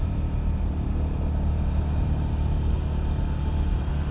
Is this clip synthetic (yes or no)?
no